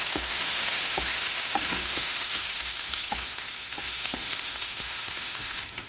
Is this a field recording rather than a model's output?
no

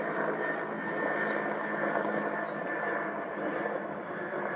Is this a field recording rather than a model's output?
yes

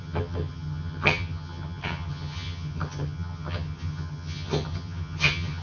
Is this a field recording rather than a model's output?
no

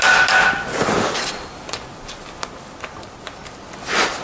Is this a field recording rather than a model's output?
yes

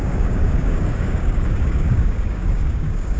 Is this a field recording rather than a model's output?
no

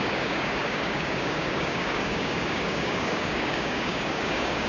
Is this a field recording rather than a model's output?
no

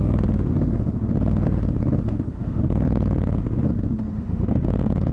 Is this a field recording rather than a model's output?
no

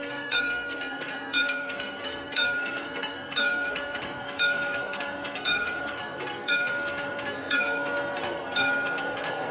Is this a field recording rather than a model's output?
no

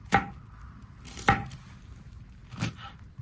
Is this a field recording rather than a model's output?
yes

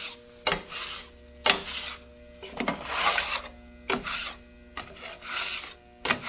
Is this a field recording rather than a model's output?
yes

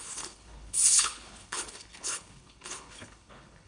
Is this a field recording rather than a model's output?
no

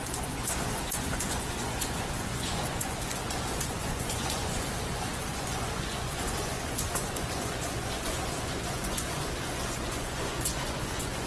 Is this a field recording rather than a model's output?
no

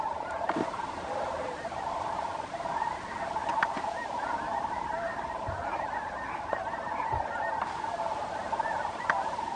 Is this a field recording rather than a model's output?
no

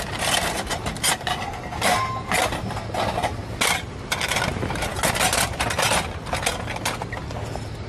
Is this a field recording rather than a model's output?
yes